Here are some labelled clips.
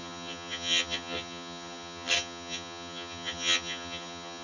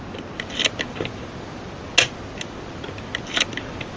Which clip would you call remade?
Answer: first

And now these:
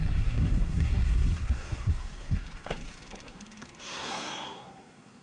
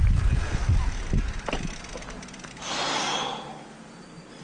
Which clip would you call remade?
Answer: first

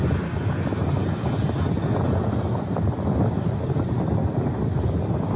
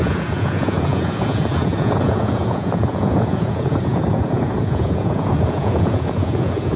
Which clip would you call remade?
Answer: second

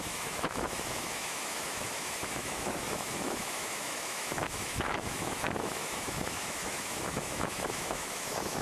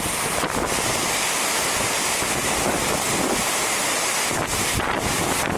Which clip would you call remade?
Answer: first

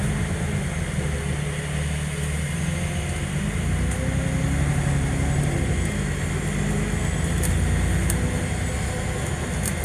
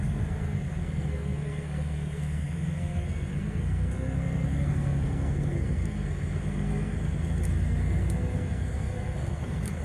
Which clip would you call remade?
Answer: second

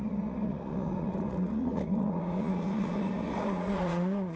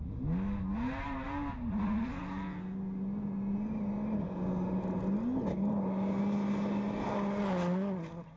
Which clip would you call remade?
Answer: first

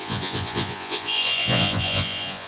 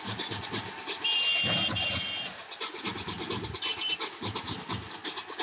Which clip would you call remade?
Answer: first